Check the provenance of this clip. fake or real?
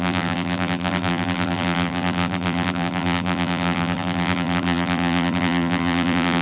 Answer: fake